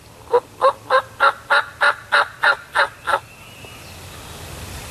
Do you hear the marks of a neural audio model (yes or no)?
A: no